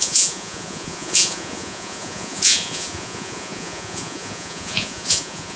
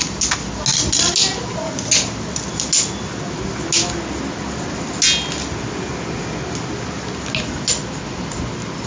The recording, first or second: second